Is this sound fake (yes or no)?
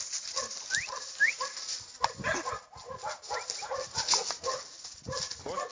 no